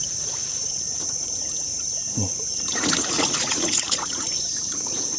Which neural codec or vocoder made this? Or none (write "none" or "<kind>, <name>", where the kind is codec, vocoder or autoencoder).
vocoder, Vocos